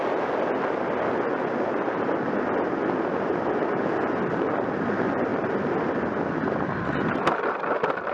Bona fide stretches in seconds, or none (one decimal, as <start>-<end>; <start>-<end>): 0.0-8.1